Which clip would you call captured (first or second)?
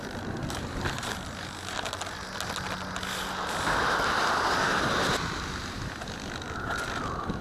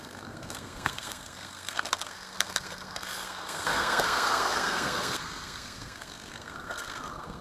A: first